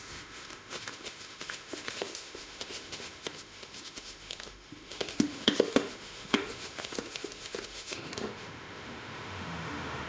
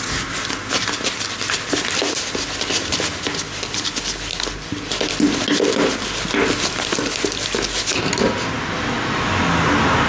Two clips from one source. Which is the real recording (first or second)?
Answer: second